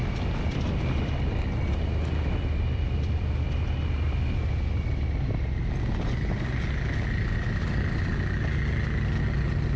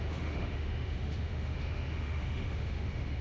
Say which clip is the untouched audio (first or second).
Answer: first